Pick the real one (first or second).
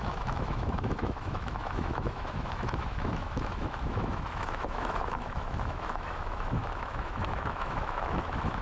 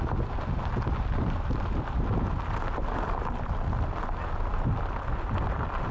second